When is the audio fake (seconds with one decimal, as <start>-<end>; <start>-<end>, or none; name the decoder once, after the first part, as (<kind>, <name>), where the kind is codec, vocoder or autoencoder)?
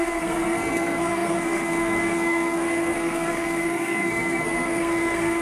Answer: 0.0-5.4 (codec, SNAC)